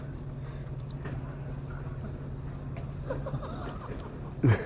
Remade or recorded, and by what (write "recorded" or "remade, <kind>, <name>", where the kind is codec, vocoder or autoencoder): recorded